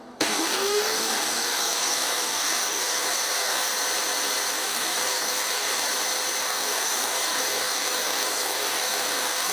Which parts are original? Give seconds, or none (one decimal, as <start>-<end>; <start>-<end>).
3.7-4.5; 5.8-6.4